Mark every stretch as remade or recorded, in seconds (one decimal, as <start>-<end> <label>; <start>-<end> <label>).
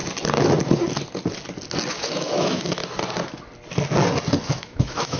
0.0-1.9 recorded; 1.9-2.8 remade; 2.8-4.4 recorded; 4.4-5.2 remade